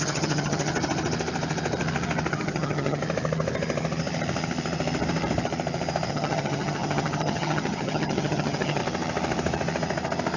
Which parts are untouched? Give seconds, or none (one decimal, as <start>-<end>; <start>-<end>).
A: 0.7-2.3; 3.0-6.1; 8.8-10.4